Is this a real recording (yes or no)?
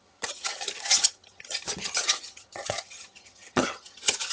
no